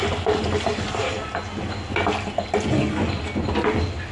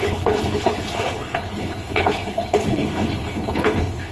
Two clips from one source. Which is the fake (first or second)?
second